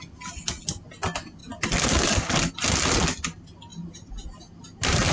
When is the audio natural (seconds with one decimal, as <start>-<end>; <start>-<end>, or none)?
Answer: 0.0-5.1